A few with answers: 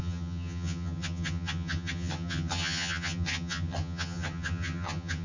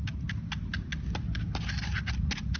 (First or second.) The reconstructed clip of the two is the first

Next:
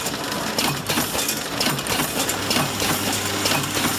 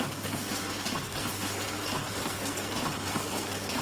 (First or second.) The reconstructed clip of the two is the second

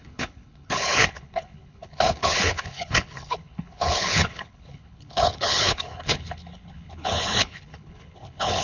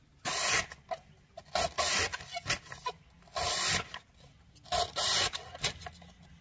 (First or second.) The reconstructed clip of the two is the first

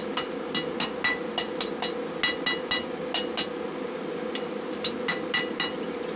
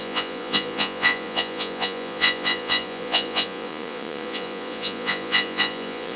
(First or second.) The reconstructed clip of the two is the second